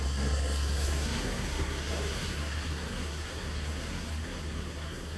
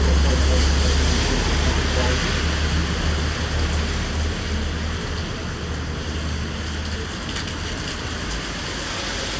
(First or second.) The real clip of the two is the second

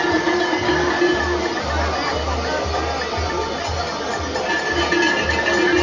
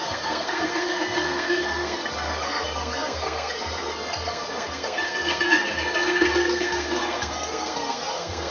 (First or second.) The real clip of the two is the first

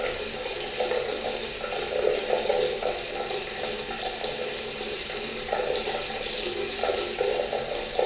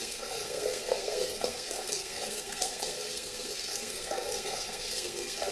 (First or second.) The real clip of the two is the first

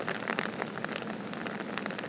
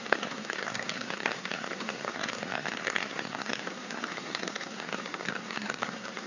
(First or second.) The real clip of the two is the first